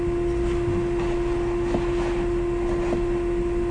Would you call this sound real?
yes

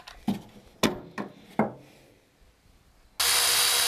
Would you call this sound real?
yes